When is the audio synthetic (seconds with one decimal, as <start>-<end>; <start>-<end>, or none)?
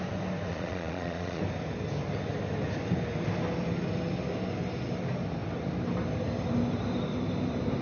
0.5-1.4